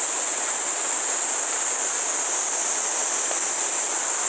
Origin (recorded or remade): recorded